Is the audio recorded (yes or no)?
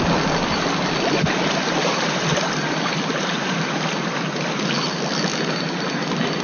yes